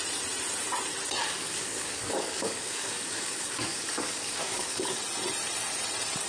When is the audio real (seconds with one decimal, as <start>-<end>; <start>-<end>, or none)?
0.0-1.2; 5.0-6.3